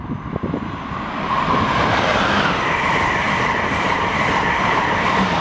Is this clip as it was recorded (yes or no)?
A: no